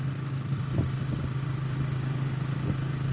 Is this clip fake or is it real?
real